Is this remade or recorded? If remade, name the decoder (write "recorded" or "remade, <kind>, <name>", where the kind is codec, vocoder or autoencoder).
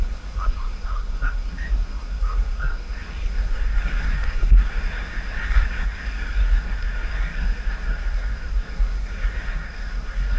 remade, codec, SNAC